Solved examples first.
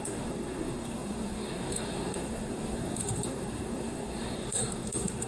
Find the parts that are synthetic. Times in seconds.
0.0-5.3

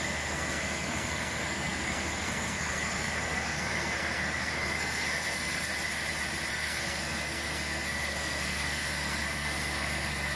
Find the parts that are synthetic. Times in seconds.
0.0-5.7; 6.5-10.4

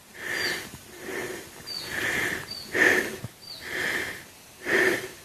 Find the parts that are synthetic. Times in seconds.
none

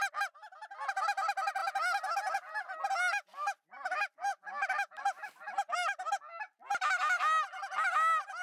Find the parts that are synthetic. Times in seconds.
none

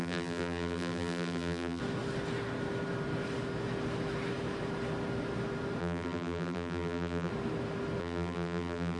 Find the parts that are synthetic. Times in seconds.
0.0-1.8; 5.8-7.3; 8.0-9.0

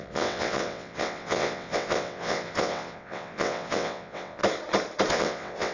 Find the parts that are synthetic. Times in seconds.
0.0-4.4; 5.1-5.7

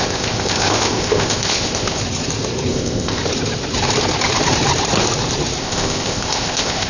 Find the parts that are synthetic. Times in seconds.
0.0-2.0; 2.7-3.2; 5.6-6.9

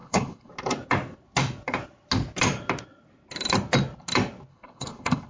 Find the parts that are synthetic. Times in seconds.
0.0-0.5; 4.5-5.3